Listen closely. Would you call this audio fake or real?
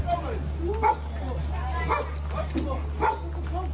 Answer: real